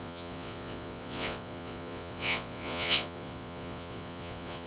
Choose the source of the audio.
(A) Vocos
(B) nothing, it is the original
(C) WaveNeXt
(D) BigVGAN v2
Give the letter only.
A